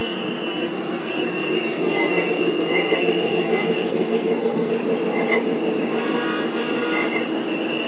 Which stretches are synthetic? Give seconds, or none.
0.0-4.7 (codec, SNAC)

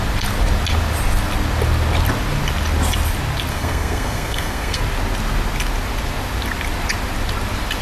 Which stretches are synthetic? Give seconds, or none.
3.5-4.8 (codec, SNAC)

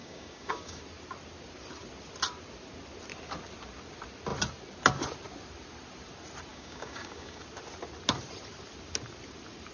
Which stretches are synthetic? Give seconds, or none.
0.0-0.8 (codec, DAC); 6.5-7.4